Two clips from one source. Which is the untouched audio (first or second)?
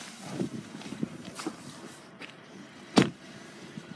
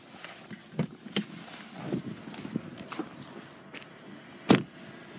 second